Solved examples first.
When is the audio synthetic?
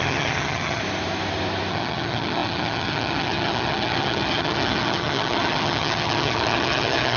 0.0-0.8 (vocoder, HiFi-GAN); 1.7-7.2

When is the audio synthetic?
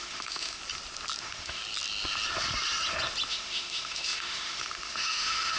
0.0-0.6 (autoencoder, DAC-VAE); 1.2-1.6; 3.3-5.6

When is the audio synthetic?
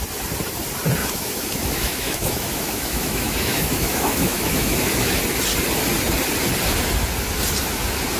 1.0-5.2 (autoencoder, DAC-VAE)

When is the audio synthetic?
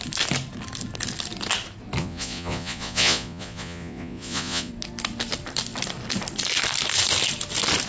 2.0-4.7 (vocoder, Vocos)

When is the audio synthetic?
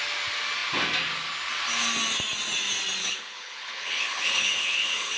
3.0-5.2 (codec, HILCodec)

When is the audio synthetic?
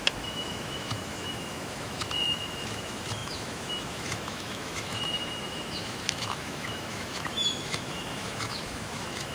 0.0-9.3 (autoencoder, DAC-VAE)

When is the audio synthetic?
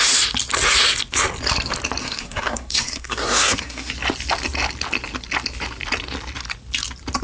2.0-3.9 (codec, SNAC)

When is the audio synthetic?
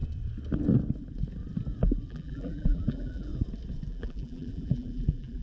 2.1-3.3 (vocoder, BigVGAN v2); 3.9-5.4